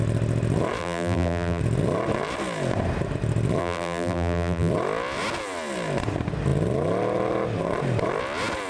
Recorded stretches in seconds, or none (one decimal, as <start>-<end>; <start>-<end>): 0.0-0.8; 1.6-3.6; 4.7-8.7